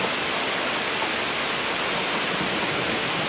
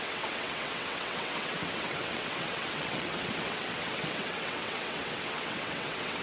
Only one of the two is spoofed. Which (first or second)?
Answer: second